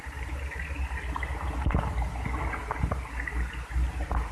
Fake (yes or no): yes